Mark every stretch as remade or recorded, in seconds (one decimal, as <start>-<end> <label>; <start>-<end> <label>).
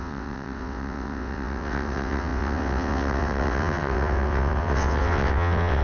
0.0-5.8 remade